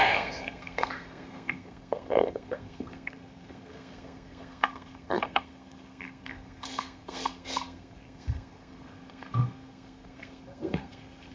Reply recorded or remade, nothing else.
remade